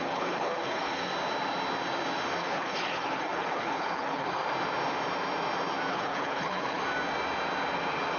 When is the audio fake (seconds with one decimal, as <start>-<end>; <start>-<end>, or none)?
0.0-1.1; 2.4-4.4; 5.9-6.8